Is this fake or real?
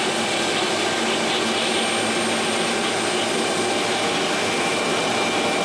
real